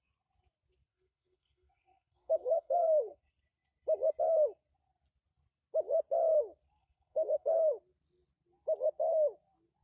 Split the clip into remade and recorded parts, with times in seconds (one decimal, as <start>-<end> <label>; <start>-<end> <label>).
0.0-0.9 recorded; 0.9-3.2 remade; 3.2-6.8 recorded; 6.8-7.7 remade; 7.7-9.8 recorded